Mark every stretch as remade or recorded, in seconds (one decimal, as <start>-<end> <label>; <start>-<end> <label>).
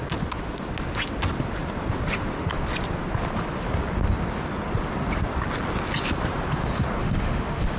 0.0-7.0 recorded; 7.0-7.8 remade